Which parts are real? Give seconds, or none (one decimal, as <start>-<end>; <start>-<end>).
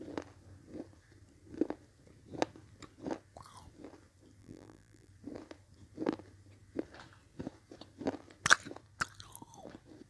0.0-4.4; 5.1-10.1